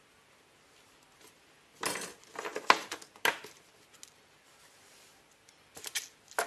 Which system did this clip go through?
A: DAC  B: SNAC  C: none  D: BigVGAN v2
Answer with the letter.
C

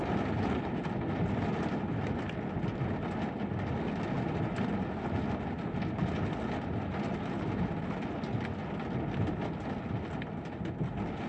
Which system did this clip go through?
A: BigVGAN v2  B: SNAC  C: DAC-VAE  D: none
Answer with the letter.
D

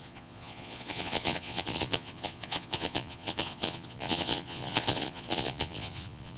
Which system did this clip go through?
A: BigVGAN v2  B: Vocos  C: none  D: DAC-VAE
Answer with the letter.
B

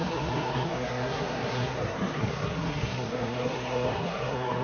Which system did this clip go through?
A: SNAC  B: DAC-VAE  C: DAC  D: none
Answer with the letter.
A